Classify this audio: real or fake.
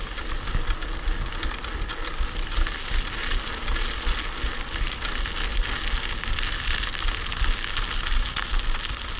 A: real